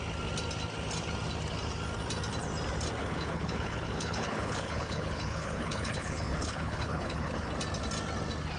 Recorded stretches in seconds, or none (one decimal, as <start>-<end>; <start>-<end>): 0.0-3.0; 7.5-8.6